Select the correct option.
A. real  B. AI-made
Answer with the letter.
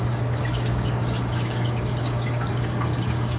B